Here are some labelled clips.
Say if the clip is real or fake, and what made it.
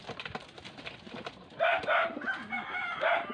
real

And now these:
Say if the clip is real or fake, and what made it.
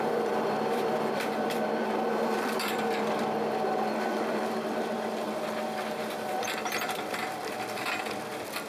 fake, vocoder, BigVGAN v2